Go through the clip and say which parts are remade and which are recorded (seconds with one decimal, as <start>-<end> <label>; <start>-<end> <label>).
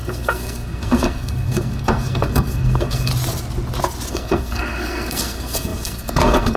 0.0-3.1 remade; 3.1-4.1 recorded; 4.1-6.6 remade